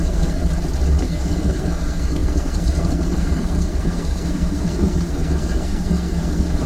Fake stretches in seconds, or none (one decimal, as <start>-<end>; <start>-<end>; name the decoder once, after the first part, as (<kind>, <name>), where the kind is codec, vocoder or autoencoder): 0.0-0.4 (codec, SNAC); 1.0-6.7

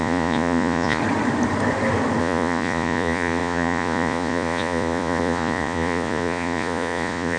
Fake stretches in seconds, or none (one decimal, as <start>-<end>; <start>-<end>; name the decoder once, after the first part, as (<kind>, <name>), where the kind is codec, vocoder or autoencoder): 0.0-1.0 (vocoder, Vocos); 2.2-7.4